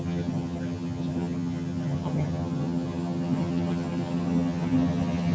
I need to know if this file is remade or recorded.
remade